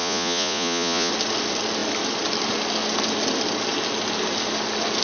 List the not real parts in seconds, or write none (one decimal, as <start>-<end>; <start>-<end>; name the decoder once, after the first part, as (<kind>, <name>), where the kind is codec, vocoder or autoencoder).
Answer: 0.0-1.1 (vocoder, Vocos)

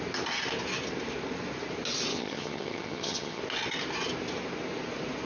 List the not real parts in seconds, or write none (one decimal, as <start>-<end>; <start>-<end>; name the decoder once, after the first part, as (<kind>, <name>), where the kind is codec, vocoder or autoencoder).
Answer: 2.1-3.4 (vocoder, HiFi-GAN)

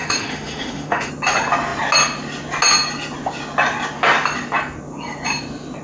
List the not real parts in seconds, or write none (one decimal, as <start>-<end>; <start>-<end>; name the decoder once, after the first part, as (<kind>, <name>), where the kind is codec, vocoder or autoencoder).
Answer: 0.0-1.1 (autoencoder, DAC-VAE)

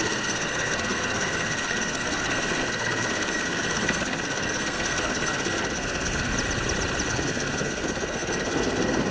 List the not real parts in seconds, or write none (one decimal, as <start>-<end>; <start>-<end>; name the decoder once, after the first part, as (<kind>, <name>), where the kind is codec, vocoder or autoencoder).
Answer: 0.0-6.3 (codec, SNAC); 7.1-9.1

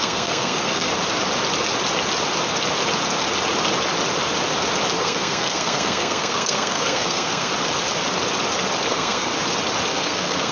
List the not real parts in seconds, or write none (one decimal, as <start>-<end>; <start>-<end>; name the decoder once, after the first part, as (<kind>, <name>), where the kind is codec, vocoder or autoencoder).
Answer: 0.0-0.9 (codec, SNAC); 5.0-7.5; 8.9-9.3; 9.9-10.5

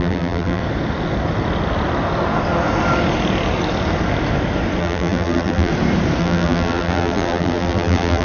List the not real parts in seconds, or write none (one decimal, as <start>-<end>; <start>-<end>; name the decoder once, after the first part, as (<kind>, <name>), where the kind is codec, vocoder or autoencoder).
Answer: 0.0-0.6 (vocoder, BigVGAN v2); 4.8-5.7; 6.2-8.2